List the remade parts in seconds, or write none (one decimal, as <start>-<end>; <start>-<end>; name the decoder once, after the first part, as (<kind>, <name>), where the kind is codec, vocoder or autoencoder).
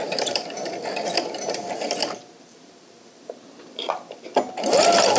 0.0-0.7 (vocoder, BigVGAN v2)